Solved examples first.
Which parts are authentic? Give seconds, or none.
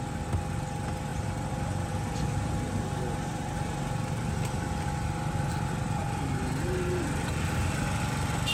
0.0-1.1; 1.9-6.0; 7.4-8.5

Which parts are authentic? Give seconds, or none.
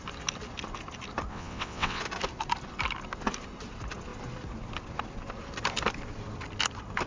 0.0-1.3; 2.0-7.1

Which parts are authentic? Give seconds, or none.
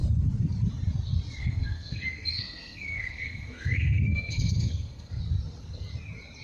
0.0-1.4; 5.2-6.4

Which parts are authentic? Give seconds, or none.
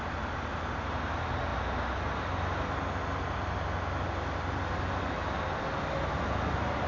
0.0-6.9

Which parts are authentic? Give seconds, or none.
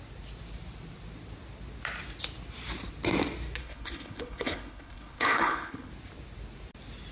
0.0-3.6; 5.9-7.1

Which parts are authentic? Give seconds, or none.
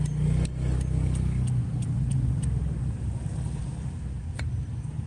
0.0-5.1